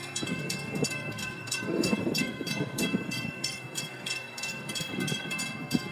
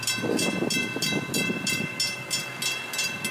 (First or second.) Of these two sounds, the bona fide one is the second